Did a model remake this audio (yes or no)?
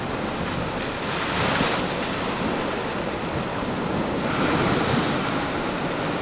no